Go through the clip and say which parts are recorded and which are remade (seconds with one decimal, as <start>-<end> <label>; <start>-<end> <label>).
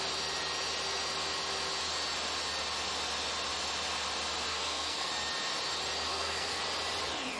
0.0-4.5 recorded; 4.5-5.1 remade; 5.1-6.1 recorded; 6.1-6.6 remade; 6.6-7.4 recorded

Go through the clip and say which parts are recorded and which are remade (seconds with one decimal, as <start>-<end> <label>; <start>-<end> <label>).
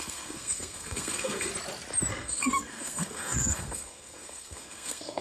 0.0-1.5 remade; 1.5-2.1 recorded; 2.1-5.2 remade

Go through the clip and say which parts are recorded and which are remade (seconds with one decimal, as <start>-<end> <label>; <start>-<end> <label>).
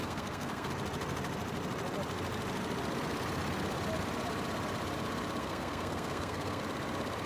0.0-0.7 remade; 0.7-5.4 recorded; 5.4-6.6 remade; 6.6-7.3 recorded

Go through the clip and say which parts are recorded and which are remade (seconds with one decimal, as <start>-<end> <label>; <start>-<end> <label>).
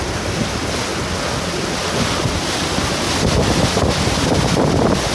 0.0-5.1 recorded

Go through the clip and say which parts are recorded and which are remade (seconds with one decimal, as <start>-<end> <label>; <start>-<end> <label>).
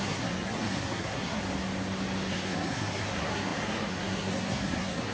0.0-1.4 remade; 1.4-2.3 recorded; 2.3-5.1 remade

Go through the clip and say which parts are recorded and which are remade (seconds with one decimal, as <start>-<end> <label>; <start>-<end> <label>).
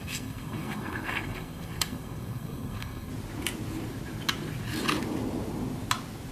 0.0-3.1 remade; 3.1-6.3 recorded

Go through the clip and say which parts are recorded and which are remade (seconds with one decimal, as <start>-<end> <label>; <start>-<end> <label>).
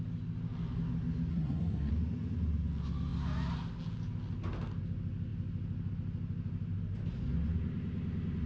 0.0-1.3 recorded; 1.3-1.9 remade; 1.9-8.5 recorded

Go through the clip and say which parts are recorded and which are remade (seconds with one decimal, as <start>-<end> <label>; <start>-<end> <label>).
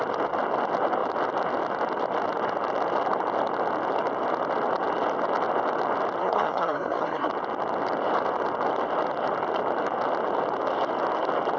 0.0-6.2 recorded; 6.2-7.3 remade; 7.3-11.6 recorded